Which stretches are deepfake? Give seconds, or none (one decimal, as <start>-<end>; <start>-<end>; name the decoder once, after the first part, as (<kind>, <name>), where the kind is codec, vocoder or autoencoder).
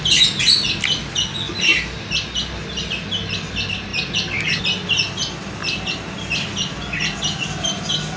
none